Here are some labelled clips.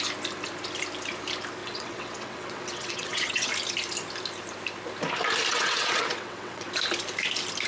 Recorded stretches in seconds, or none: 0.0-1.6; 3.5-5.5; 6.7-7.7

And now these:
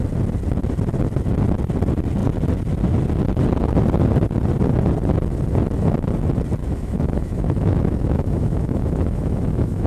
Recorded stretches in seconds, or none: 0.0-6.6

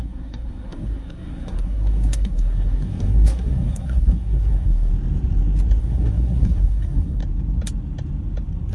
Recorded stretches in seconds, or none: 4.9-5.8; 7.2-8.7

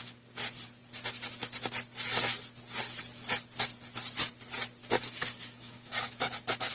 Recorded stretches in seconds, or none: 0.0-4.8

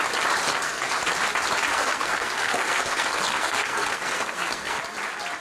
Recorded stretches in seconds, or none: 0.0-0.5; 1.0-1.7; 4.8-5.4

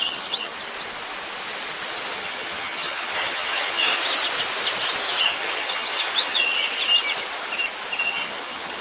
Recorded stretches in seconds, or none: 0.5-2.1; 4.0-5.2; 6.5-8.0